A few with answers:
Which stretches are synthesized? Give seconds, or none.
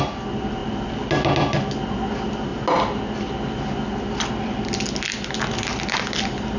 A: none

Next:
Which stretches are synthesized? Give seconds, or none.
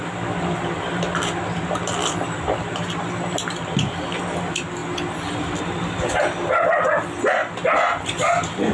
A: none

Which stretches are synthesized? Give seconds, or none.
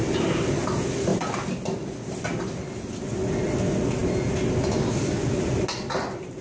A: none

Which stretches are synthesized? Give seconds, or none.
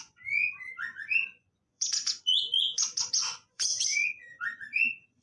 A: 0.0-5.2 (vocoder, Vocos)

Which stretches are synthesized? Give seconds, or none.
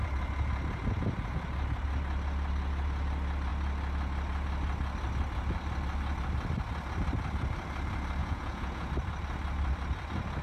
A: 8.2-8.9 (vocoder, Vocos)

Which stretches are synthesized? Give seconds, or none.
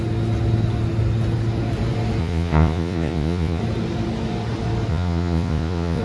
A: 2.2-3.6 (vocoder, Vocos); 4.9-6.0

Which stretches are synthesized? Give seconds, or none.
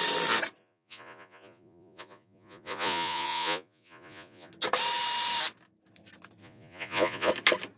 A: 0.6-4.5 (vocoder, Vocos); 6.4-7.3